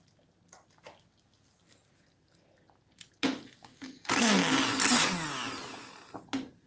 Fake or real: real